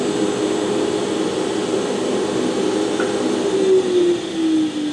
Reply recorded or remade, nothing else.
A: recorded